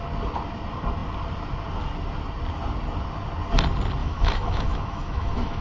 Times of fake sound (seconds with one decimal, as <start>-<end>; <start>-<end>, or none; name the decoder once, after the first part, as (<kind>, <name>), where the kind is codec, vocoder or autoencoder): 4.0-5.6 (autoencoder, DAC-VAE)